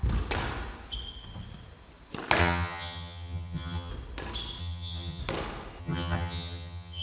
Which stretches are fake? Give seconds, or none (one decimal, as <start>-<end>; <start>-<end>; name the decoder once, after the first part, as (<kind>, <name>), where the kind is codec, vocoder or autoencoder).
2.4-3.9 (vocoder, HiFi-GAN); 4.6-5.2; 5.8-7.0